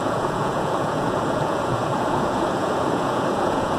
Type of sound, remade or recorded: remade